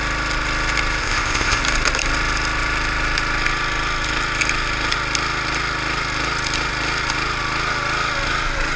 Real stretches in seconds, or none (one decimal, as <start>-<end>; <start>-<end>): 0.0-1.0; 1.6-8.8